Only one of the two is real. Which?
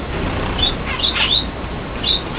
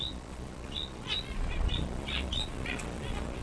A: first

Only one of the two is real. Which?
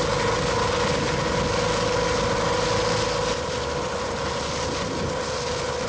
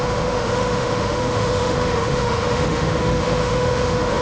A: first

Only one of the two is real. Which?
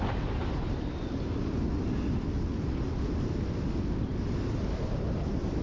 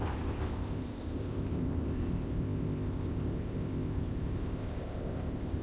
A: first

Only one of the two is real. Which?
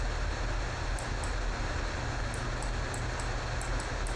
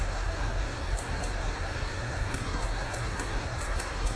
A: first